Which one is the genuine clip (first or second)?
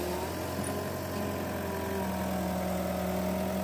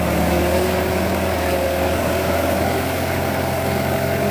first